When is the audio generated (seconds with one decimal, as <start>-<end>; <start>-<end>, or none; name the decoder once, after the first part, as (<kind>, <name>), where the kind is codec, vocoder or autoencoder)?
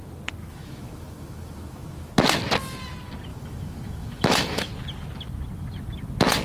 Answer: 0.4-2.1 (autoencoder, DAC-VAE); 3.3-4.7